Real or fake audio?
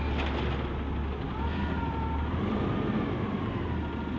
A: real